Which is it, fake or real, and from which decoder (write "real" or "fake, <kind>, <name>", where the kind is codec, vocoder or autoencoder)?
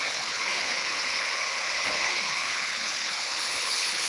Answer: fake, codec, HILCodec